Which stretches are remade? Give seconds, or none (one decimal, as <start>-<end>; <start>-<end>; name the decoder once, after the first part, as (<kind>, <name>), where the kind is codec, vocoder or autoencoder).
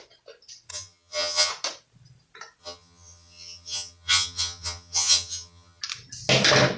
0.7-1.5 (vocoder, HiFi-GAN); 2.6-5.8